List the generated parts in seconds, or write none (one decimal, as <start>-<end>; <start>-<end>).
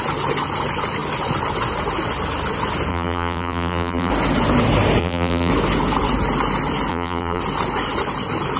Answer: 2.9-4.1; 5.0-5.5; 6.9-7.4